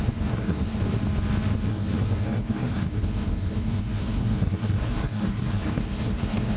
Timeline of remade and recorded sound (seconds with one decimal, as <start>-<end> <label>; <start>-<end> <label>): 0.0-0.8 remade; 0.8-1.7 recorded; 1.7-6.6 remade